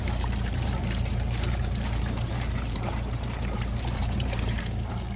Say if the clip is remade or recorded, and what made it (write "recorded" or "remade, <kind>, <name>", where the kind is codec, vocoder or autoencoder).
remade, vocoder, BigVGAN v2